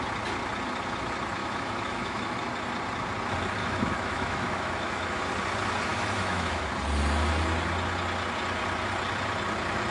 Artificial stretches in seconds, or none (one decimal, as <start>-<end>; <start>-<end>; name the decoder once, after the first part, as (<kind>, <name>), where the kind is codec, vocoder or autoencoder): 1.4-2.4 (autoencoder, DAC-VAE); 3.6-5.2; 5.9-6.6